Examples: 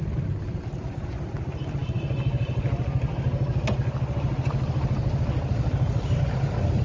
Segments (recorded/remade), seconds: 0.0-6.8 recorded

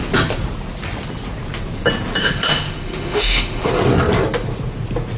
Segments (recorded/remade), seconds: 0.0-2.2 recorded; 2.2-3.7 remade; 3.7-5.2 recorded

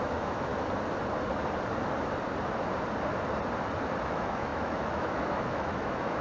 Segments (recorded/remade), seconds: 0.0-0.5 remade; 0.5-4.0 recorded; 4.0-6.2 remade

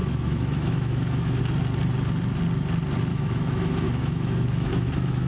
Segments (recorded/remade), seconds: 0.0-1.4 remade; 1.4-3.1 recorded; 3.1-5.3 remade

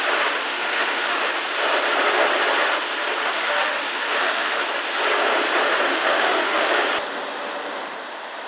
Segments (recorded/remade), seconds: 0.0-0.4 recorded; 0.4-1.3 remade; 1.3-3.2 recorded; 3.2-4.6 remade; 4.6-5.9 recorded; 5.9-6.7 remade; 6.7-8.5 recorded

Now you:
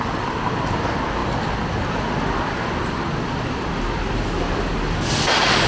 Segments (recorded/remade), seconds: 0.0-5.7 recorded

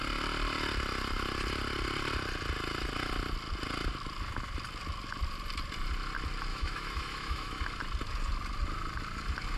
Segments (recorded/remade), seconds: 0.0-6.5 recorded; 6.5-7.6 remade; 7.6-9.6 recorded

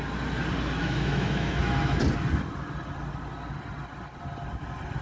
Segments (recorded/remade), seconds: 0.0-0.8 recorded; 0.8-2.0 remade; 2.0-5.0 recorded